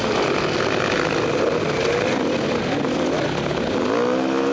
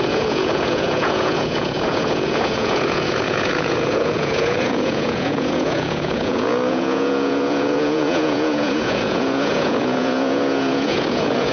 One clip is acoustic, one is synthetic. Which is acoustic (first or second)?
first